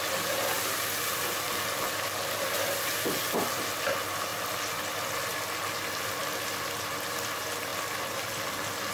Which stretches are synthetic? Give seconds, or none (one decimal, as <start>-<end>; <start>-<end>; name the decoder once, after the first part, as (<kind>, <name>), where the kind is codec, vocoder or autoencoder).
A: 5.3-6.2 (vocoder, BigVGAN v2)

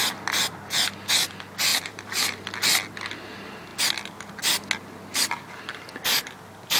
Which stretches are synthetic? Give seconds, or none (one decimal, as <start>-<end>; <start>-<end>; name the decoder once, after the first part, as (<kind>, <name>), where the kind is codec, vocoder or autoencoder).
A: 1.7-2.4 (vocoder, BigVGAN v2)

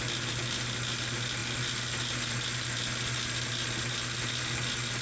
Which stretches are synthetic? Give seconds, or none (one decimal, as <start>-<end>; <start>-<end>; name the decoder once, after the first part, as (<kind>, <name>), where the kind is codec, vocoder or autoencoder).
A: none

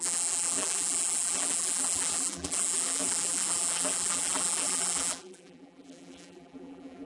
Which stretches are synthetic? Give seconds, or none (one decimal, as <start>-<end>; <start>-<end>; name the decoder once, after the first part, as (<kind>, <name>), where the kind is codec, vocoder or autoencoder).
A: 0.0-7.1 (vocoder, BigVGAN v2)

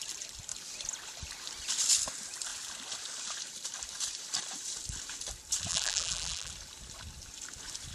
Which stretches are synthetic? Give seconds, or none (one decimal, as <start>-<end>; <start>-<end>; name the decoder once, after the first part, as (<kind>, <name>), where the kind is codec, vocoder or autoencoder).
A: 5.7-6.5 (vocoder, BigVGAN v2)